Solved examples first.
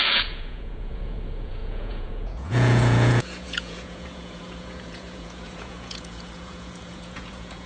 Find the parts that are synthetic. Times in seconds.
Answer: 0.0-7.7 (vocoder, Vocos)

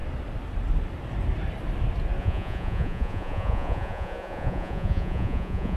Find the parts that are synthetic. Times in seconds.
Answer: 2.2-5.8 (vocoder, Vocos)

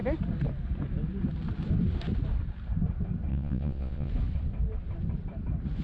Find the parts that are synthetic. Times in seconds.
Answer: 3.3-4.1 (vocoder, Vocos)